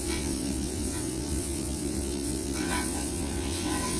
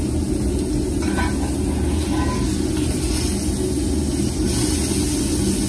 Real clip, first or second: second